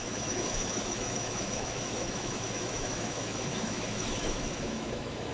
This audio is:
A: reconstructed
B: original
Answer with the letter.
A